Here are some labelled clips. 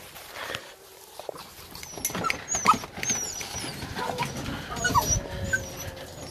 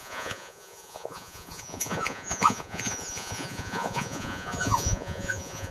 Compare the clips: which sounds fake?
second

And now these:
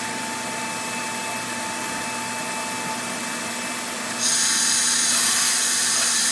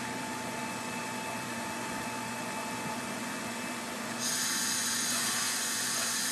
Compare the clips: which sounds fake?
second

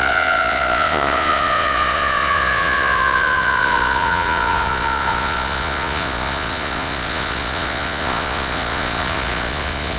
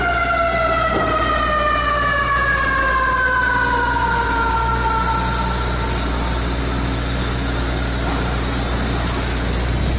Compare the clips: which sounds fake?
first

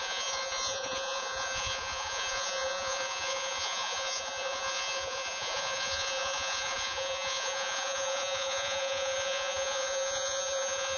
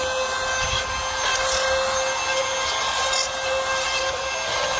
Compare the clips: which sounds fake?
first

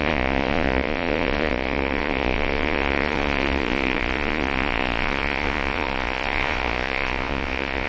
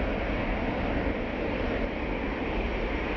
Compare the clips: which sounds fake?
first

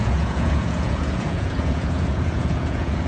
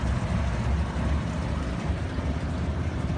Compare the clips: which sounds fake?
first